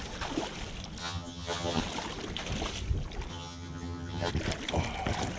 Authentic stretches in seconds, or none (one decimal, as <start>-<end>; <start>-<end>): 0.0-1.0; 1.8-3.3; 4.3-5.4